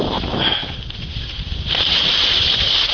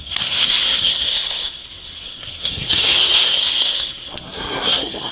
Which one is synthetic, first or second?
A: second